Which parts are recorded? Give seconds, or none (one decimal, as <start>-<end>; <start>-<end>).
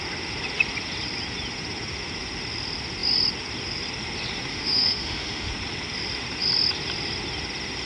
0.0-4.5; 5.5-7.9